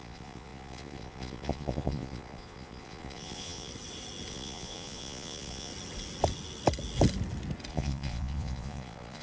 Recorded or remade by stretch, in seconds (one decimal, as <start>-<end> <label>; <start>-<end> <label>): 0.0-3.7 remade; 3.7-4.3 recorded; 4.3-5.7 remade; 5.7-7.7 recorded; 7.7-9.2 remade